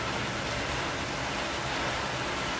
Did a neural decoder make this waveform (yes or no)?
no